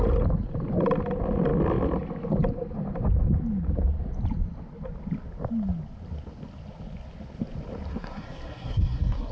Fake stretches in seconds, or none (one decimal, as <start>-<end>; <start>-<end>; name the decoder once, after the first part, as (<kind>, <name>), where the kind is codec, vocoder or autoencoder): 7.9-9.3 (codec, SNAC)